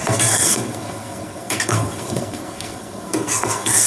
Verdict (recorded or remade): remade